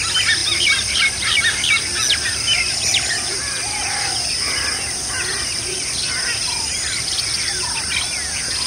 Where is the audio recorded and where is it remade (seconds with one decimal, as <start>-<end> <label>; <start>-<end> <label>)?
0.0-2.9 recorded; 2.9-3.4 remade; 3.4-8.7 recorded